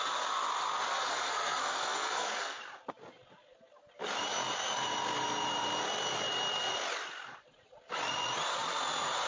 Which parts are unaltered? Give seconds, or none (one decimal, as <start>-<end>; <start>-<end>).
0.0-0.9; 2.6-9.3